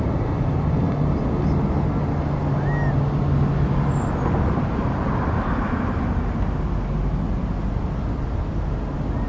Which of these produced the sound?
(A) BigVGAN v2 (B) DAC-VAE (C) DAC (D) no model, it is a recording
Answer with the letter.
D